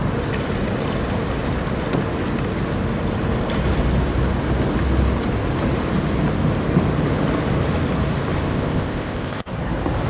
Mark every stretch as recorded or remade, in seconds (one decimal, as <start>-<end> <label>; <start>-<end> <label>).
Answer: 0.0-8.5 recorded; 8.5-9.5 remade; 9.5-10.1 recorded